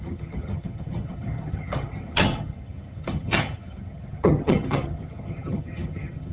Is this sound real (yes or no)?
no